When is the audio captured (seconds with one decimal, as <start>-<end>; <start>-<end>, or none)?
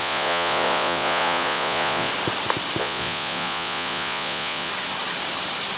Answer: 2.1-2.8; 4.7-5.8